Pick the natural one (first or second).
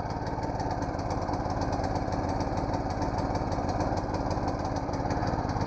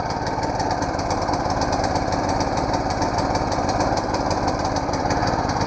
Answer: first